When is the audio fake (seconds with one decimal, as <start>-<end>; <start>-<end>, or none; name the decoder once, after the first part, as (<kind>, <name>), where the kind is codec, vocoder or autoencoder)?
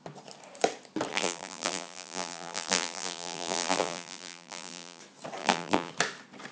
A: 1.1-5.0 (vocoder, BigVGAN v2); 5.4-5.9